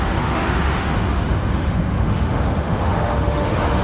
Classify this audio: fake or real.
fake